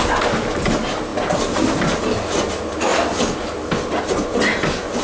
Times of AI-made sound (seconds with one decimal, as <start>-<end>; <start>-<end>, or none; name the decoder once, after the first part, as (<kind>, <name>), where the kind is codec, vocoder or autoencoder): none